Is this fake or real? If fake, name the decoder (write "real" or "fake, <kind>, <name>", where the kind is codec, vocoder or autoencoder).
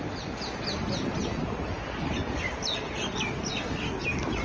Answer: real